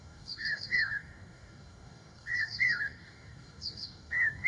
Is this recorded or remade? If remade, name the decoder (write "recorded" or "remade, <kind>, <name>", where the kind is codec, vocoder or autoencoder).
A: remade, codec, DAC